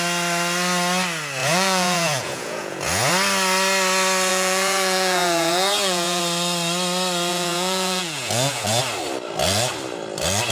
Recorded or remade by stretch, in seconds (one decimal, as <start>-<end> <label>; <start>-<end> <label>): 0.0-1.4 recorded; 1.4-3.1 remade; 3.1-4.3 recorded; 4.3-6.2 remade; 6.2-7.3 recorded; 7.3-8.8 remade; 8.8-10.5 recorded